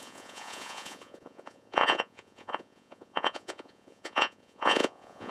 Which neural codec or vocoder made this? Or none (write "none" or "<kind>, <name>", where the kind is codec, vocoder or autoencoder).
vocoder, Vocos